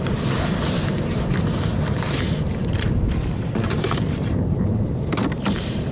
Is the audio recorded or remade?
remade